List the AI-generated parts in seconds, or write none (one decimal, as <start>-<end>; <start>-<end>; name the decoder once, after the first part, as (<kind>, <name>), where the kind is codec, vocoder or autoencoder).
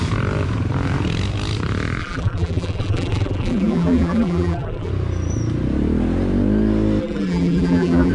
2.0-4.9 (vocoder, BigVGAN v2); 7.0-8.1